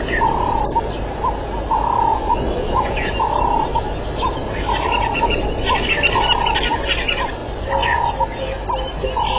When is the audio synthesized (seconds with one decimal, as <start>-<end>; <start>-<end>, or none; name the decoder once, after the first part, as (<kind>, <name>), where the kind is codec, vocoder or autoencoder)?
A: 2.1-3.1 (vocoder, Vocos); 7.4-8.1